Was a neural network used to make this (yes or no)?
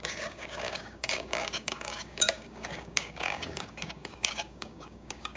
yes